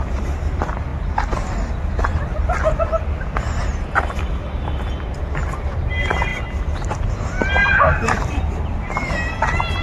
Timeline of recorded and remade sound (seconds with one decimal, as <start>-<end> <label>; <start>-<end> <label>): 0.0-7.6 recorded; 7.6-9.3 remade; 9.3-9.8 recorded